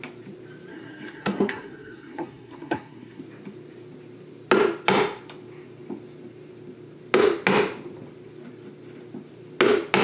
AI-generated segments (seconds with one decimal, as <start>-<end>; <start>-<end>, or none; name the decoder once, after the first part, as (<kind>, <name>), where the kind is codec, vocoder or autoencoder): 0.7-3.2 (codec, SNAC)